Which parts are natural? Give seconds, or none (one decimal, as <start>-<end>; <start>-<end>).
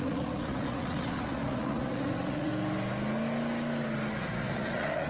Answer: 2.5-4.2